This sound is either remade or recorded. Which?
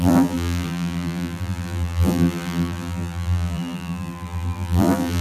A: remade